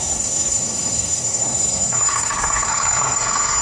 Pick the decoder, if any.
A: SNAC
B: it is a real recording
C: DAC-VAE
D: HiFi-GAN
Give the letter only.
A